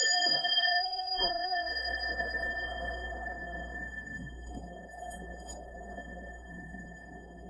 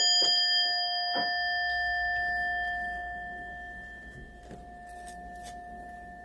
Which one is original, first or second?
second